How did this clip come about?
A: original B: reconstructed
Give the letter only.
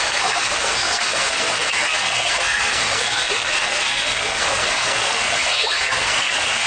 B